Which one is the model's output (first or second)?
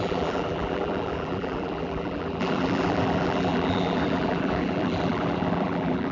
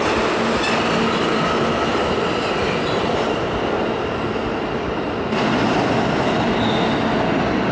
first